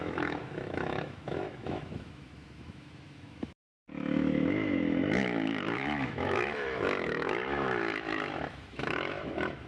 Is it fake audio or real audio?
fake